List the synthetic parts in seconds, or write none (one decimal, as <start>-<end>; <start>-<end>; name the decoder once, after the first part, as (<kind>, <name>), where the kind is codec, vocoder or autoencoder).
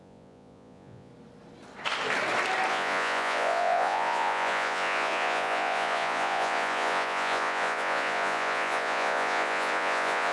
0.0-1.1 (vocoder, Vocos); 2.7-10.3